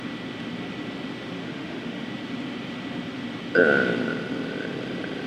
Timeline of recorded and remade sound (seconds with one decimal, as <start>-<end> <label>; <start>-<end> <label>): 0.0-1.4 recorded; 1.4-2.1 remade; 2.1-5.3 recorded